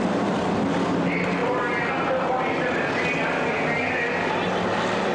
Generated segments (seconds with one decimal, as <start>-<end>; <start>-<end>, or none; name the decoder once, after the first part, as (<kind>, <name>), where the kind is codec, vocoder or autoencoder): none